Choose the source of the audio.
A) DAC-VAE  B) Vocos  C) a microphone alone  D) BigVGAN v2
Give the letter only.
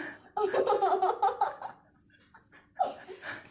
C